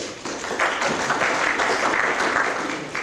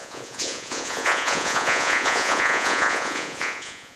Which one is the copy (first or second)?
second